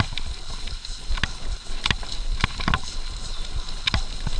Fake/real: real